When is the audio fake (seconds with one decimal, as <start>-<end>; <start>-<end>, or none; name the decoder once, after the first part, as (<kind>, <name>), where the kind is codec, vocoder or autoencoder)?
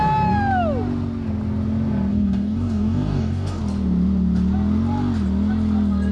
2.1-3.6 (codec, DAC)